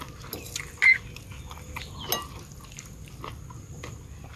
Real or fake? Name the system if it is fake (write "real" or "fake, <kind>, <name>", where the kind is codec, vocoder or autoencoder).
real